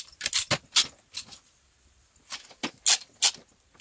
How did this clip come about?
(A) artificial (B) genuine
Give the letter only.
B